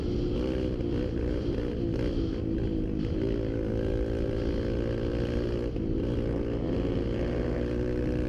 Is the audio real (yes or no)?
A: yes